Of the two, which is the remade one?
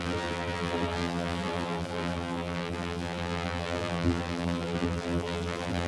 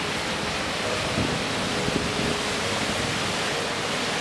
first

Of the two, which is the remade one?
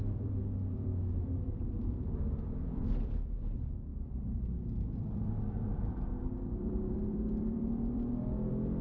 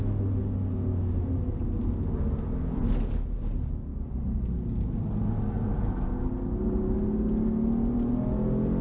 first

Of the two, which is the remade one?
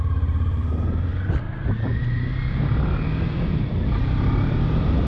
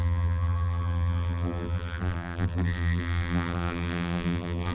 second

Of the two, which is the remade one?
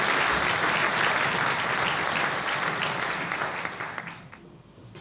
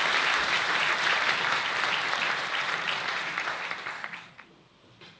second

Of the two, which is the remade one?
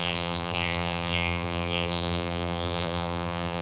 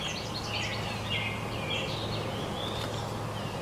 first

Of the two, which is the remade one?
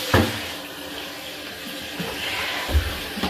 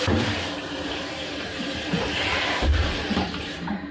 second